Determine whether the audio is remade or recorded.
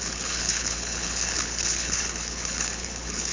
remade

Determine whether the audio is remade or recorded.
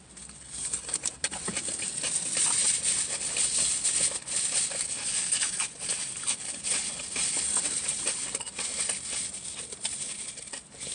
recorded